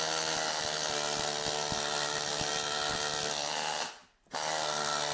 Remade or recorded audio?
recorded